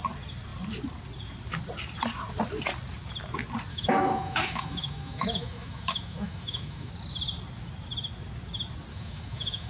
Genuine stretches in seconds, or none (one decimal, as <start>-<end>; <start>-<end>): 0.0-3.7; 6.9-8.9